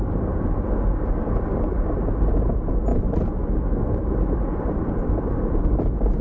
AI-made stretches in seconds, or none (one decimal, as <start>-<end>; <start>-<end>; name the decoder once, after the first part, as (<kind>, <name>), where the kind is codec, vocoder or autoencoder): 2.9-6.2 (vocoder, BigVGAN v2)

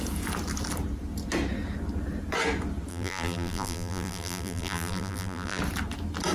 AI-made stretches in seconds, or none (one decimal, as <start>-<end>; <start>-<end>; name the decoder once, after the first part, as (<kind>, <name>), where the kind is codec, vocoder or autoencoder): 2.9-5.6 (vocoder, BigVGAN v2)